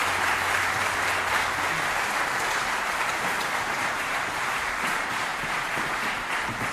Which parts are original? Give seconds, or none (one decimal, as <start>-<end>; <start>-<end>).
0.0-3.7; 5.3-6.7